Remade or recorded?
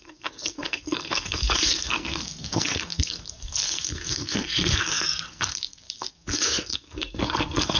remade